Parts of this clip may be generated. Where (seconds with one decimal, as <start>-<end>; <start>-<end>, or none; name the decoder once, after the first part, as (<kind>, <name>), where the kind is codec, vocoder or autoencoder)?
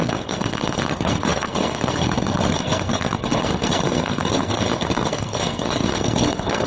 0.0-6.7 (codec, SNAC)